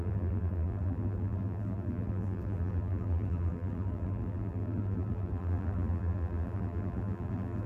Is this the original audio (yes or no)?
no